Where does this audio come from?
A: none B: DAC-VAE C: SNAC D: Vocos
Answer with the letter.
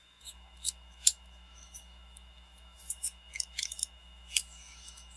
B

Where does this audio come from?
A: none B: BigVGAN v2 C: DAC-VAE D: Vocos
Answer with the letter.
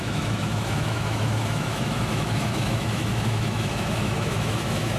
C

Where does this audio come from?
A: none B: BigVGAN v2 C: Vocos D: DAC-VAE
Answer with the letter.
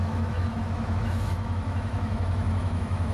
D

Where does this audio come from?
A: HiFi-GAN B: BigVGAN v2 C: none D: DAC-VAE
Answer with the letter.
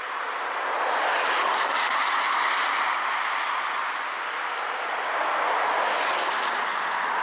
C